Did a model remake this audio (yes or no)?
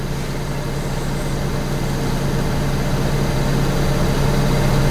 no